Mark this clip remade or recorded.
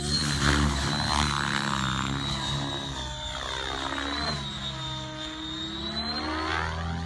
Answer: recorded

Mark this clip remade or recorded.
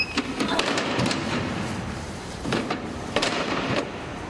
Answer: remade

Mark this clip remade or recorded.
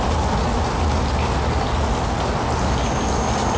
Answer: recorded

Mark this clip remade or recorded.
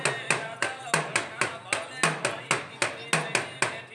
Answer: recorded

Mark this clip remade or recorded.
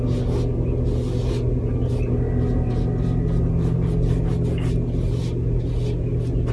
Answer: recorded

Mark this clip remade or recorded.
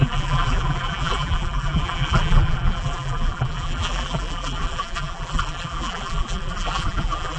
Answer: remade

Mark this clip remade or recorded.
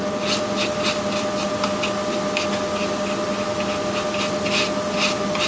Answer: recorded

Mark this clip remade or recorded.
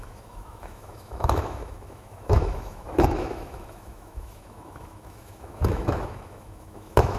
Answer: remade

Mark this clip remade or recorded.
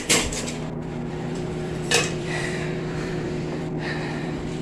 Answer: remade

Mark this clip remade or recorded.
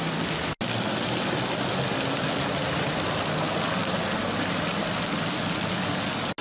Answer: recorded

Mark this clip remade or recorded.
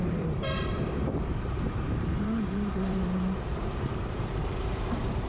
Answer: remade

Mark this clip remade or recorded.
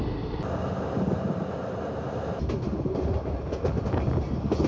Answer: recorded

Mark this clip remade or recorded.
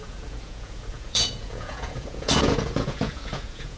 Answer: remade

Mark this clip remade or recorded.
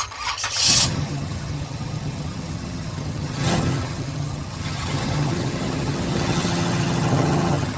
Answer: remade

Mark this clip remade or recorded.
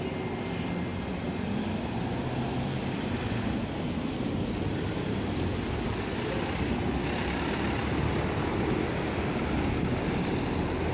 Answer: recorded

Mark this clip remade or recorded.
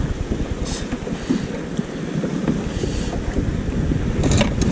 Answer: recorded